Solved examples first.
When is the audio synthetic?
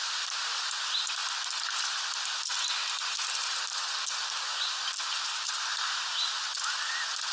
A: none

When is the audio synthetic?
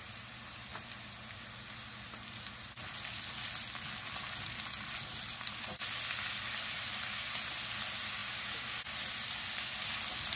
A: none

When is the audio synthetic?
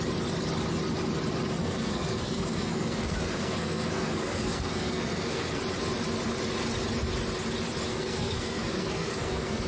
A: 1.6-5.6 (codec, SNAC); 7.9-9.7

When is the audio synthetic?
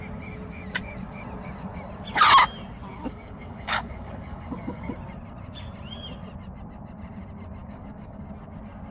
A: 2.9-4.9 (codec, DAC); 7.6-8.2